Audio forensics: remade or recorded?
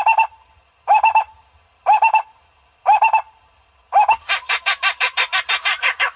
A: remade